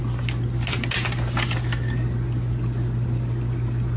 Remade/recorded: recorded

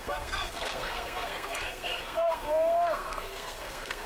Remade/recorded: remade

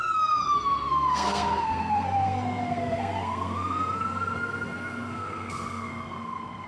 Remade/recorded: remade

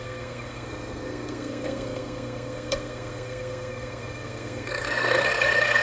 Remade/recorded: remade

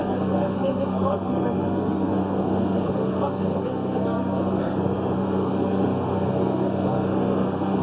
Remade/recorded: remade